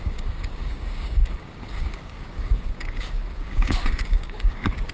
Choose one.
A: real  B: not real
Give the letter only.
B